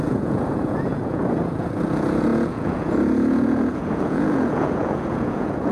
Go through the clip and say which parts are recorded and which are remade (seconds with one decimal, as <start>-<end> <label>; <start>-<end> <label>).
0.0-5.7 remade